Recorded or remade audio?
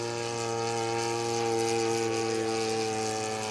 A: recorded